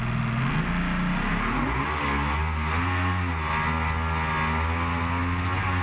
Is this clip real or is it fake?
real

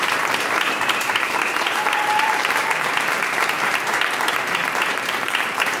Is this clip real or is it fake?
fake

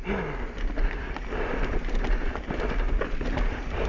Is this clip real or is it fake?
real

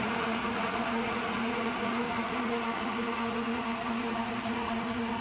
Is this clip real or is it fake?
fake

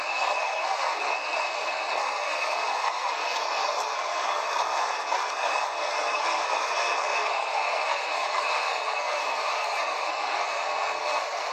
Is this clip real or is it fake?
fake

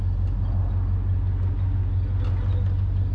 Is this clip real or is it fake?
real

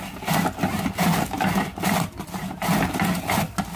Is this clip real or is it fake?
real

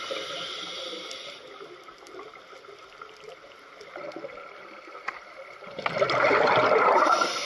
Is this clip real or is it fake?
fake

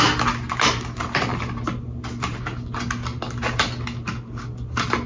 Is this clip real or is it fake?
real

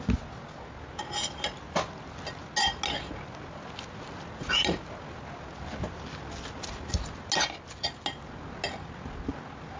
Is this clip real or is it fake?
real